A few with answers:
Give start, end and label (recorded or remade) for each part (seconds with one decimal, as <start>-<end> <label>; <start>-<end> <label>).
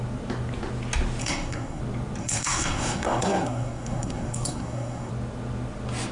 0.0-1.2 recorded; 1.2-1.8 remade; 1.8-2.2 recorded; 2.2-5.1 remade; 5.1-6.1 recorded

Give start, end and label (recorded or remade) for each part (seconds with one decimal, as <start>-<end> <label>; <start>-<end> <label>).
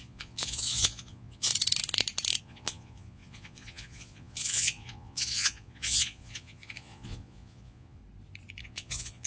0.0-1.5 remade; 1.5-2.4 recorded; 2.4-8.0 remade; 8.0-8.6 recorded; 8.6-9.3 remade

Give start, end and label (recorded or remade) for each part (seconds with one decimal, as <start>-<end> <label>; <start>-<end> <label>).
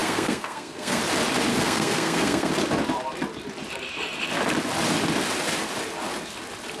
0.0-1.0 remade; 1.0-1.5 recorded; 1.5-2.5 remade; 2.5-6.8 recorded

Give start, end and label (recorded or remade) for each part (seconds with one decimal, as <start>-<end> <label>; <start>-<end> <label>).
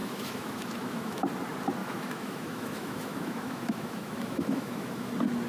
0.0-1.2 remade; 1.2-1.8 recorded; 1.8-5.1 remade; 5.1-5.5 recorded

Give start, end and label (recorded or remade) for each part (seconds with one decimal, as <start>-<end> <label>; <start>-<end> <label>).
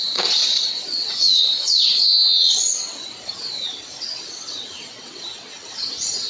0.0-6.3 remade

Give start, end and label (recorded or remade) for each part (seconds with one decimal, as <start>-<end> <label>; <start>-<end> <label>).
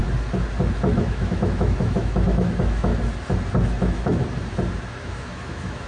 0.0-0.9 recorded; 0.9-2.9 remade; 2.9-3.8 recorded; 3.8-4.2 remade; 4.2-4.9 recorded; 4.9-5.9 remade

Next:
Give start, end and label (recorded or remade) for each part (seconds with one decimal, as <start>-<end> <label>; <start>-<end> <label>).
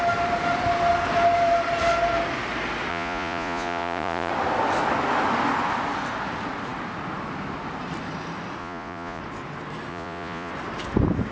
0.0-2.9 recorded; 2.9-4.3 remade; 4.3-8.6 recorded; 8.6-9.2 remade; 9.2-9.9 recorded; 9.9-10.5 remade; 10.5-11.3 recorded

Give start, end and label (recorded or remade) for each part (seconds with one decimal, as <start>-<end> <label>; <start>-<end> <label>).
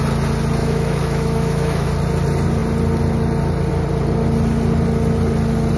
0.0-0.6 recorded; 0.6-1.9 remade; 1.9-5.8 recorded